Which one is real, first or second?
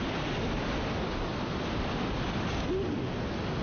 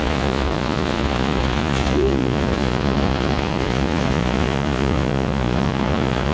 first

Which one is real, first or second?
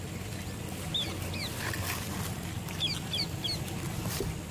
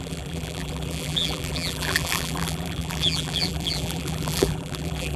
first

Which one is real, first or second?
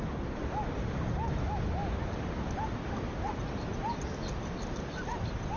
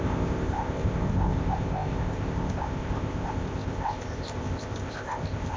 first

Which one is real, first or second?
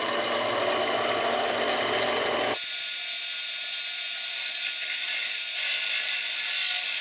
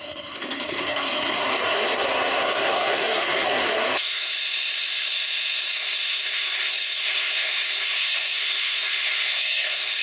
first